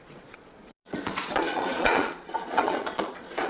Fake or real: fake